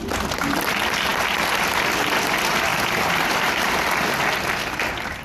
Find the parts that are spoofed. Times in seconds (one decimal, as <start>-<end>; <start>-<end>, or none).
2.7-3.7